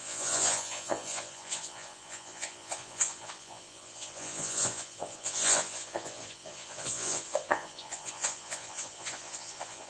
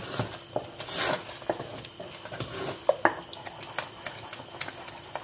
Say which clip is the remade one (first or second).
first